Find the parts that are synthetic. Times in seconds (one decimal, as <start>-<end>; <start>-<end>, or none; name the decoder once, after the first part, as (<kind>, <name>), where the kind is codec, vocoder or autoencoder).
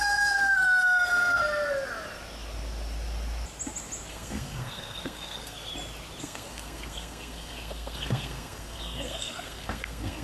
0.0-1.4 (codec, SNAC); 4.1-5.7; 6.2-10.2